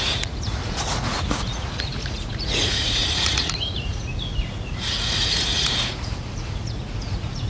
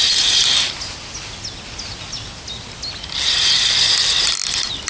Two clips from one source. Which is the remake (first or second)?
first